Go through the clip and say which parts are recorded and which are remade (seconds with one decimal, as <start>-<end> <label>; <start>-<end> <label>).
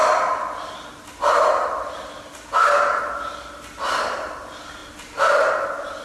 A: 0.0-6.0 recorded